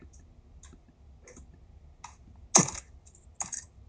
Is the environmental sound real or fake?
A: real